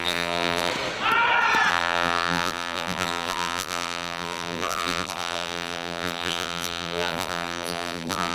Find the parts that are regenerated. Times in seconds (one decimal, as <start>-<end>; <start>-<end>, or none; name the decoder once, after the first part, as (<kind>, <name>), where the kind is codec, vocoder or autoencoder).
0.0-0.7 (vocoder, BigVGAN v2); 1.7-8.3